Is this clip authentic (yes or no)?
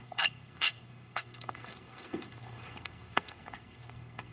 no